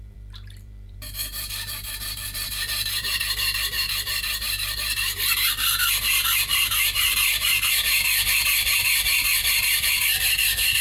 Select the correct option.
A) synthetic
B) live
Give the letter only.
A